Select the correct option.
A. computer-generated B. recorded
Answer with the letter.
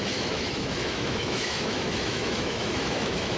A